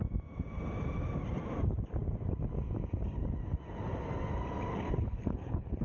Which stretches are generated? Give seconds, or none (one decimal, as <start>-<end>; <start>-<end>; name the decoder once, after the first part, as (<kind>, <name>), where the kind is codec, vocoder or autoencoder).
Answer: 4.7-5.8 (codec, HILCodec)